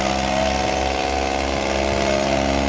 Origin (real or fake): real